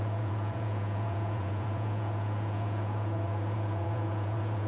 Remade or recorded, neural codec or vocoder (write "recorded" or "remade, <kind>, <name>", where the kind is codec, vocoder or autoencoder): remade, vocoder, Vocos